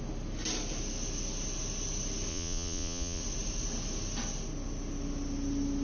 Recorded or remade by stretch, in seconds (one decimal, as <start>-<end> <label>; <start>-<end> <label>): 0.0-2.3 recorded; 2.3-3.2 remade; 3.2-5.8 recorded